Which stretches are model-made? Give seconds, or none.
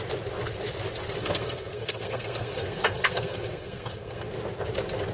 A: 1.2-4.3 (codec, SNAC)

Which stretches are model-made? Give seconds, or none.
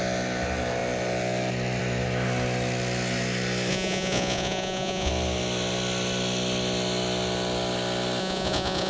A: 3.7-5.1 (vocoder, Vocos); 8.2-8.9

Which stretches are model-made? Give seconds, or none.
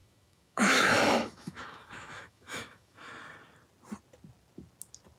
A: 0.0-3.1 (autoencoder, DAC-VAE)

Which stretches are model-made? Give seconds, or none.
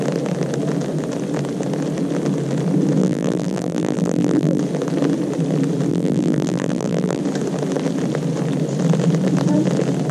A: 3.0-4.6 (vocoder, BigVGAN v2); 5.9-7.2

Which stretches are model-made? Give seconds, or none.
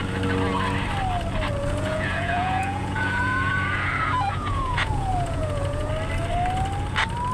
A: 1.5-5.9 (vocoder, Vocos)